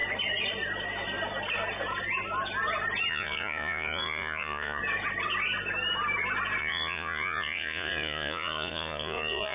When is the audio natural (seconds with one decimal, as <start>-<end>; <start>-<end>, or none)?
0.0-3.1; 4.8-6.6